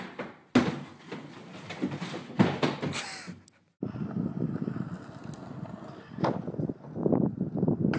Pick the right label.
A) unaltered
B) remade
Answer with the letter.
A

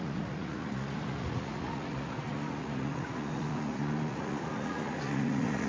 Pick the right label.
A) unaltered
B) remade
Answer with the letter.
B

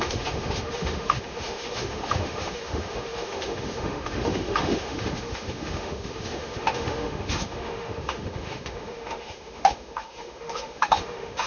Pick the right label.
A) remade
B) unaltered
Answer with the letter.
A